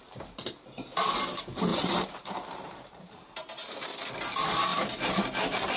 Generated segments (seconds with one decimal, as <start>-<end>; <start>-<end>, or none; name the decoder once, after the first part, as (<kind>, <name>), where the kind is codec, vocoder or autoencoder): 1.7-4.0 (vocoder, BigVGAN v2)